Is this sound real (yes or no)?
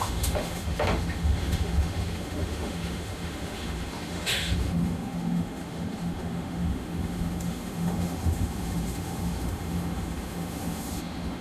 no